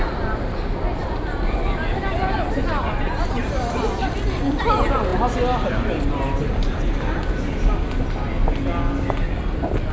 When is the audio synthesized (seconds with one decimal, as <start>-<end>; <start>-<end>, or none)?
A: none